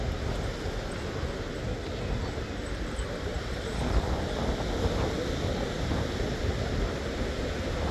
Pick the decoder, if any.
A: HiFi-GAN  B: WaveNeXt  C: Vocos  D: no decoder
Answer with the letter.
D